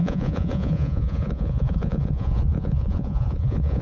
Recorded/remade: remade